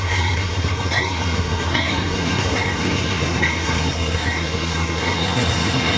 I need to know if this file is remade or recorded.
remade